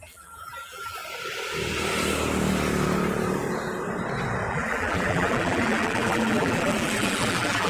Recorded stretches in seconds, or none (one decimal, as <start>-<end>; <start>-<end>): 1.0-4.5